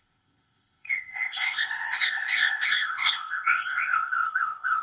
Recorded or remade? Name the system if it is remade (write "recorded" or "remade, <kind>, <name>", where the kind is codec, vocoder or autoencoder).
remade, codec, ZipCodec